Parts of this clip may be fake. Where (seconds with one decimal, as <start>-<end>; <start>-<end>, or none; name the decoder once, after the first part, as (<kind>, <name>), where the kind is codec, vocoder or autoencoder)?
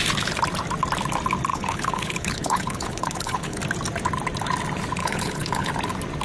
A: 1.5-3.6 (codec, HILCodec); 5.0-5.7